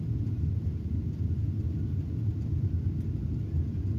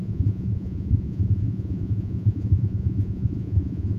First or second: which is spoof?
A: second